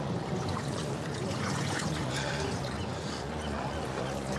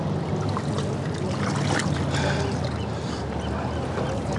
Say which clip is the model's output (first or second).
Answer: first